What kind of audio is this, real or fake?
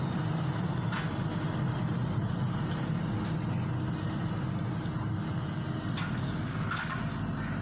real